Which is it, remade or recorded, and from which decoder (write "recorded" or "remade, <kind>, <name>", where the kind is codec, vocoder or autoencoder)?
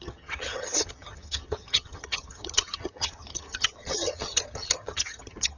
remade, vocoder, HiFi-GAN